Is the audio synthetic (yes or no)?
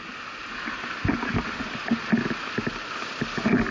no